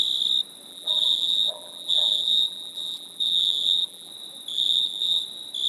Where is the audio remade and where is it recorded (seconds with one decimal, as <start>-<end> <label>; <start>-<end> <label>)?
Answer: 0.0-0.7 recorded; 0.7-4.1 remade; 4.1-4.5 recorded; 4.5-5.2 remade; 5.2-5.7 recorded